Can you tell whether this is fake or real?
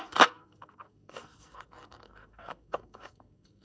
fake